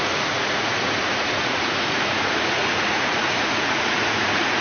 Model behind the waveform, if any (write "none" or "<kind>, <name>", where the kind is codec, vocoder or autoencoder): vocoder, Vocos